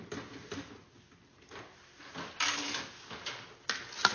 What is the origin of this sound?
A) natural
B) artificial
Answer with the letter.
A